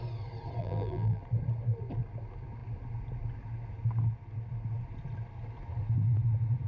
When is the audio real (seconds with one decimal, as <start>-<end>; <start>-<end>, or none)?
0.0-0.6; 1.2-6.7